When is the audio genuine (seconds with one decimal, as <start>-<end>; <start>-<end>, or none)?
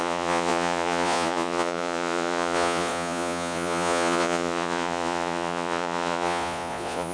none